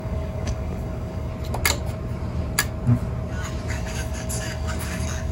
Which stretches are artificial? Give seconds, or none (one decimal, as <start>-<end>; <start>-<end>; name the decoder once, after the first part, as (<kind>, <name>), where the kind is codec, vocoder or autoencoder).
0.0-1.3 (codec, DAC); 3.7-5.3